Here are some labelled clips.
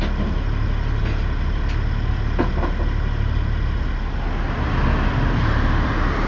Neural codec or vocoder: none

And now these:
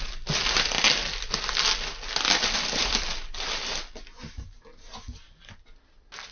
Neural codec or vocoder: none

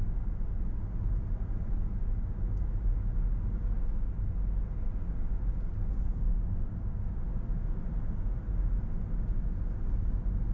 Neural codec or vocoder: none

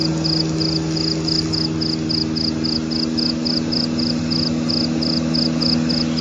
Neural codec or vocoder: none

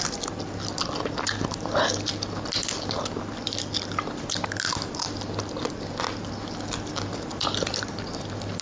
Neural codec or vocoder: none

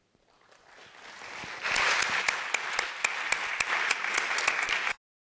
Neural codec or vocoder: none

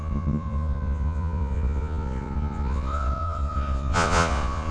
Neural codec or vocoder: vocoder, Vocos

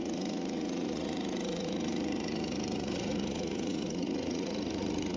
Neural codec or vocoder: vocoder, Vocos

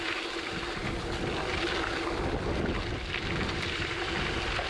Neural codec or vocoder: none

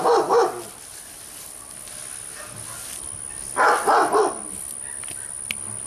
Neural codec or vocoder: none